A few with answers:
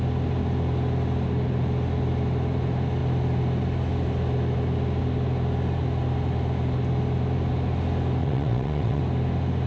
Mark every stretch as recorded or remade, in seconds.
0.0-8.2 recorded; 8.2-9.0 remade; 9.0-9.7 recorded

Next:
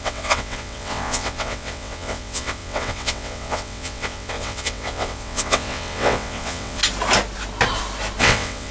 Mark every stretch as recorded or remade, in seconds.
0.0-6.8 remade; 6.8-8.2 recorded; 8.2-8.7 remade